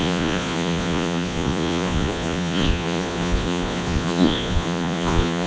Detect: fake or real fake